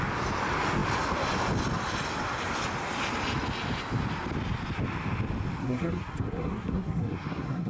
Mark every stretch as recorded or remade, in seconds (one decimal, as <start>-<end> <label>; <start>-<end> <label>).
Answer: 0.0-5.6 recorded; 5.6-7.7 remade